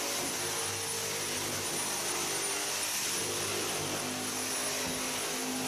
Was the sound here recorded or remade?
recorded